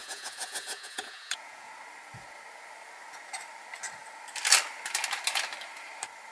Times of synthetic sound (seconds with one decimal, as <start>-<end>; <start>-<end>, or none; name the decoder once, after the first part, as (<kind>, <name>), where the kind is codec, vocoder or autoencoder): 0.0-1.7 (vocoder, Vocos)